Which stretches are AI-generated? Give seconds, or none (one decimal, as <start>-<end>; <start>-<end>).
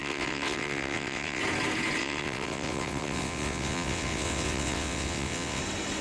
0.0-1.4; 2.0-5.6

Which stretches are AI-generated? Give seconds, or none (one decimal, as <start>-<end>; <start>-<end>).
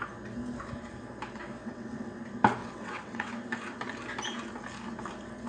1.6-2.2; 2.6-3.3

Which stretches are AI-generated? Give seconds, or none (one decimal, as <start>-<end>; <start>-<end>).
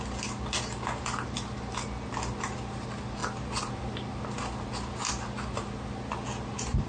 none